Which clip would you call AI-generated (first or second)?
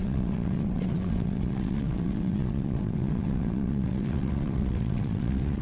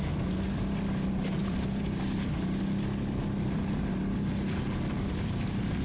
first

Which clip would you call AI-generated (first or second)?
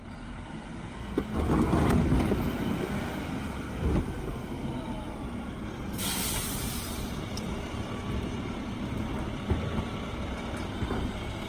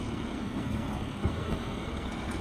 second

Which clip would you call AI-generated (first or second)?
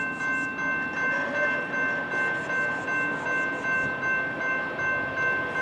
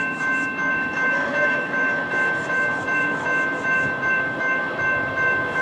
second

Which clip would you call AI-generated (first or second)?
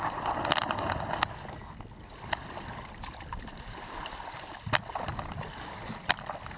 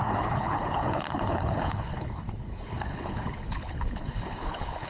second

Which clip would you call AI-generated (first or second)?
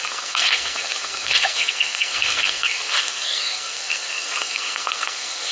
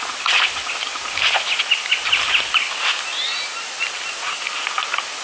first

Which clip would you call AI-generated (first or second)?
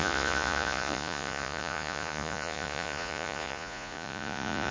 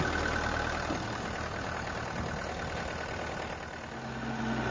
first